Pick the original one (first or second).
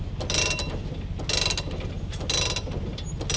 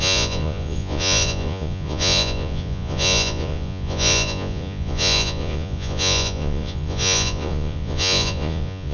first